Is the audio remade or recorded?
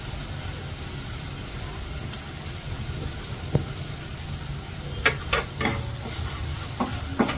recorded